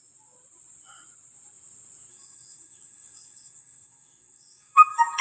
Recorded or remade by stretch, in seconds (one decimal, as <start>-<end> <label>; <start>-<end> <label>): 0.0-2.1 recorded; 2.1-5.2 remade